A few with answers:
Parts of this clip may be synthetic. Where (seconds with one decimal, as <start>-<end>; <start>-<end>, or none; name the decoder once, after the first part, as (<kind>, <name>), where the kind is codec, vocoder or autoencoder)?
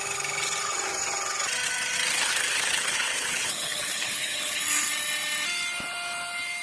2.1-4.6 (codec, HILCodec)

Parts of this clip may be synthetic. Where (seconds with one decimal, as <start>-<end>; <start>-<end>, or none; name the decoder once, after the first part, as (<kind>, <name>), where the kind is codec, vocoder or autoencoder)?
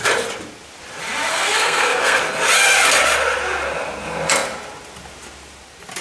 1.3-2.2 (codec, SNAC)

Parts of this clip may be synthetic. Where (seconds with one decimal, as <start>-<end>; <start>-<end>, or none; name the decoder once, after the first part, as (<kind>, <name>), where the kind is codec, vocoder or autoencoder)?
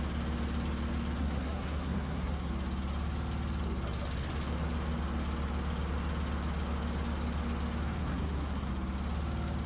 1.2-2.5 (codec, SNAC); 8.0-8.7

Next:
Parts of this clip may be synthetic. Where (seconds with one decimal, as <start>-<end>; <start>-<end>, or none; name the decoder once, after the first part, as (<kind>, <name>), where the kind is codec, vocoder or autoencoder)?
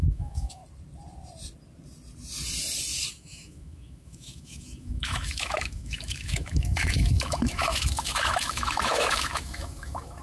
0.0-0.6 (autoencoder, DAC-VAE); 3.1-10.2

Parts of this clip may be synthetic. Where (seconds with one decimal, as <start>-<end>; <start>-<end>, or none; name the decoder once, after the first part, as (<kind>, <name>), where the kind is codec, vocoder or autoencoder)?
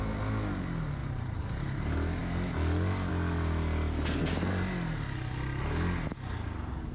1.0-1.8 (vocoder, BigVGAN v2)